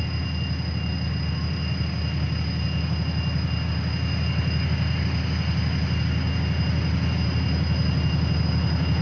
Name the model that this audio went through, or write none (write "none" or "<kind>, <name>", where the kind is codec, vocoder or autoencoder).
none